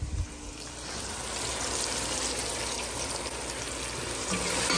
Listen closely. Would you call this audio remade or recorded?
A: recorded